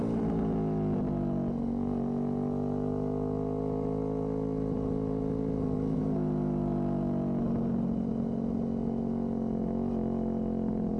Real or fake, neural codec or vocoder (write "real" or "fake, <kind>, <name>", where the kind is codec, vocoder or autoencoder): real